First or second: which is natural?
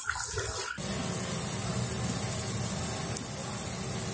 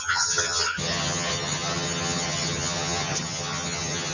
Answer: first